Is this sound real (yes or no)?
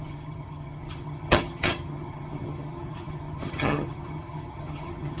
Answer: no